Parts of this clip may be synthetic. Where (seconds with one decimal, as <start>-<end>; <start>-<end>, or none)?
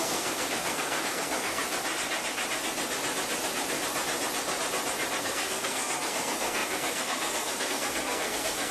0.0-1.6; 5.2-8.7